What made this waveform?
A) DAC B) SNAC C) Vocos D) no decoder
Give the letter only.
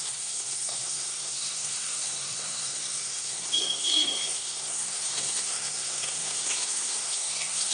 B